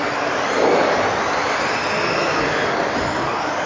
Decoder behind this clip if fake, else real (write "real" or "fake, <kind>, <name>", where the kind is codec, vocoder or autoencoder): real